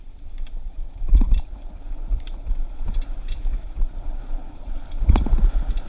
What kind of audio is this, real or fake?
fake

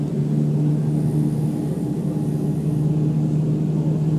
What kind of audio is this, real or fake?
real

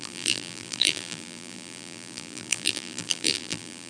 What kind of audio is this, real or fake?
fake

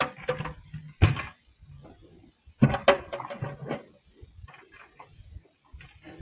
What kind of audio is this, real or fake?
real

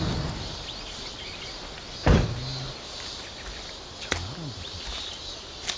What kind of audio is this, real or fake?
real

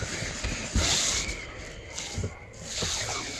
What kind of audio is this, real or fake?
real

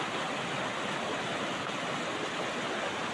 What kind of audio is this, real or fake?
real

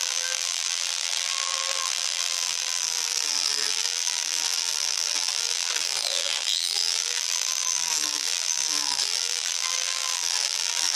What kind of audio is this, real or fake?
fake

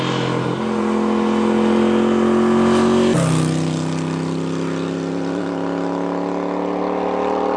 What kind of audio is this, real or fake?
real